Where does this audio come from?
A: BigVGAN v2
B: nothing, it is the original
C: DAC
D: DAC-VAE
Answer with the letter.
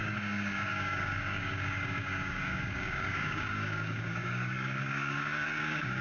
C